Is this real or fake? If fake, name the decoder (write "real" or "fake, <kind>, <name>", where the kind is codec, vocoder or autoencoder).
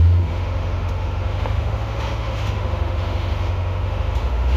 fake, autoencoder, DAC-VAE